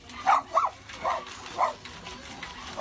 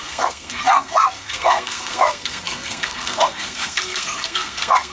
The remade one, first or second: second